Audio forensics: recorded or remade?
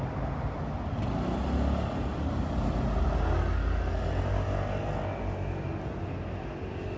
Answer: recorded